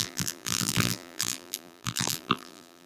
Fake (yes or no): yes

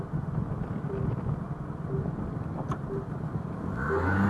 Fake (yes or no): no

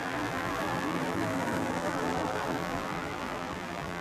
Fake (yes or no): yes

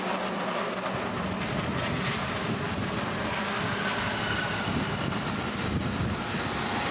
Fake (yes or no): no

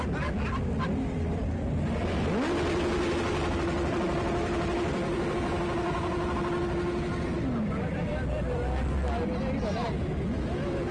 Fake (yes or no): no